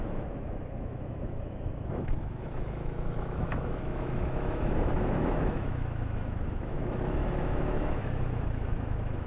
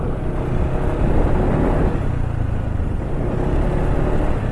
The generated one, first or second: first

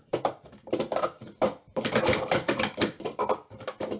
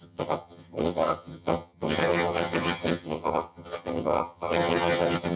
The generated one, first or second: second